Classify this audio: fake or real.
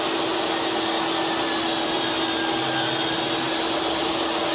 real